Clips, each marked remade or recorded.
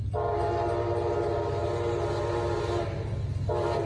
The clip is recorded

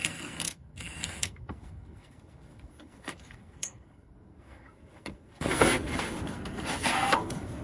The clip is remade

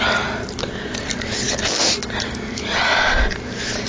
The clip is recorded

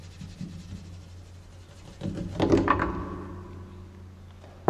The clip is recorded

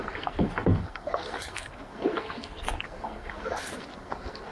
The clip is remade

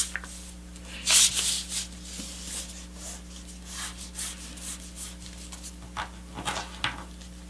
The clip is recorded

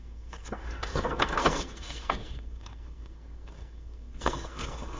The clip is remade